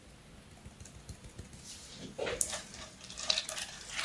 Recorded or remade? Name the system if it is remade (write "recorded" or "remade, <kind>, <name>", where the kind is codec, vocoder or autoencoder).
recorded